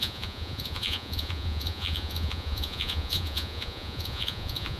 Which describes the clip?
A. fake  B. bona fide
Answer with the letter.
A